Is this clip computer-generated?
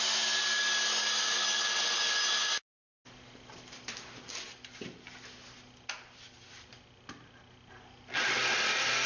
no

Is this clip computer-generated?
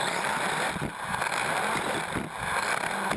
no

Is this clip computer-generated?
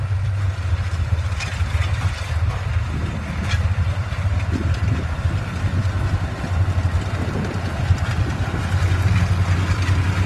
no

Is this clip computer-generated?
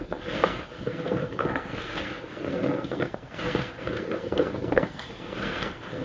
yes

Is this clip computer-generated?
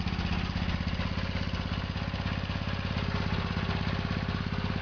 no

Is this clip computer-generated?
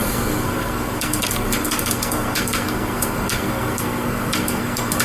yes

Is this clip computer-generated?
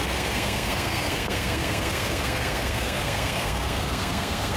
yes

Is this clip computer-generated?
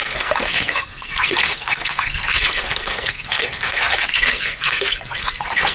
yes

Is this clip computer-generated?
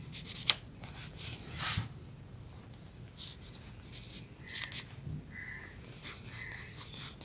no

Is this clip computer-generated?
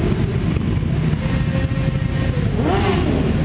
no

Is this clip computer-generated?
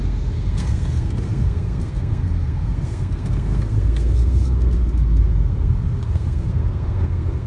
yes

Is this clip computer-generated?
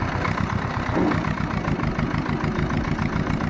no